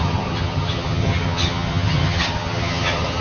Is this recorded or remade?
remade